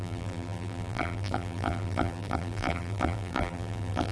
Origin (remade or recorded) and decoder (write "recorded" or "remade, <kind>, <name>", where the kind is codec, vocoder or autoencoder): remade, vocoder, BigVGAN v2